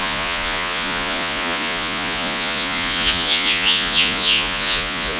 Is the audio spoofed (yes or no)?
yes